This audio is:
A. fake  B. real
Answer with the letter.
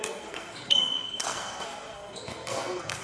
A